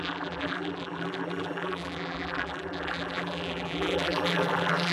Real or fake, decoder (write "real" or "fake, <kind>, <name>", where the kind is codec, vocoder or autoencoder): fake, vocoder, BigVGAN v2